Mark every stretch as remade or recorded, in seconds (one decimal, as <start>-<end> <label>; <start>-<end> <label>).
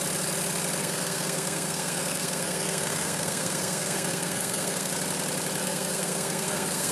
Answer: 0.0-0.8 recorded; 0.8-4.9 remade; 4.9-5.6 recorded; 5.6-6.9 remade